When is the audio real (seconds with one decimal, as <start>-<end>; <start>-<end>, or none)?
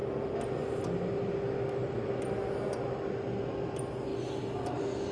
0.0-5.1